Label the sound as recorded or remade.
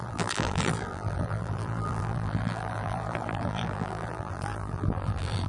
remade